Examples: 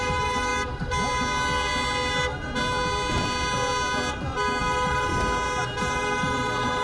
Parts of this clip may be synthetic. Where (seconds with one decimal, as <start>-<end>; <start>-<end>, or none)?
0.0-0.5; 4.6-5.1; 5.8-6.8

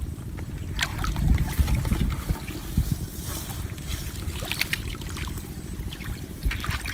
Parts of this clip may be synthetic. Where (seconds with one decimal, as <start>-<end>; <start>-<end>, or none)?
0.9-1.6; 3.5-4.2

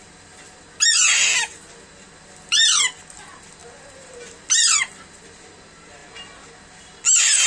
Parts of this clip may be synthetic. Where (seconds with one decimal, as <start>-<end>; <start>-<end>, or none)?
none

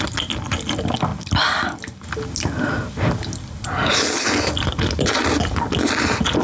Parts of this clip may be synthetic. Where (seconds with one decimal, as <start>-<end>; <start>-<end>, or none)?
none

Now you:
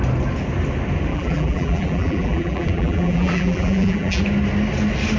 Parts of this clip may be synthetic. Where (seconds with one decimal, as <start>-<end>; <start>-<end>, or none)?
1.1-4.2

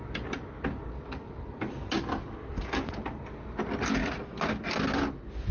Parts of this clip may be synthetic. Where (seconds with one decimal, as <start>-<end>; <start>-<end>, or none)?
2.4-2.9

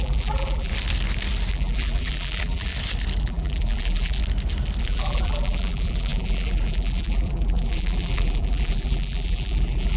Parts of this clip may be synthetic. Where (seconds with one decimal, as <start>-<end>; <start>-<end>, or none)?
0.0-0.7; 1.5-2.7; 3.2-4.2; 4.8-10.0